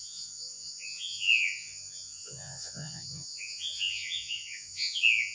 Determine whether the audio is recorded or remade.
remade